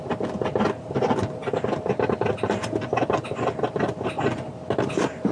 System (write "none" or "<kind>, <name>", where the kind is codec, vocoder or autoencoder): none